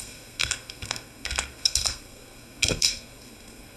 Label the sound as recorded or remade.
remade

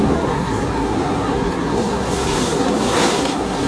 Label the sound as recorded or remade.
remade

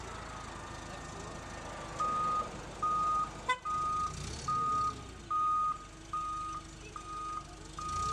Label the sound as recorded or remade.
recorded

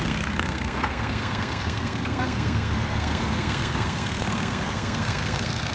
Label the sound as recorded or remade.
remade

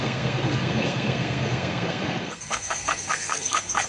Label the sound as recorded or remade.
remade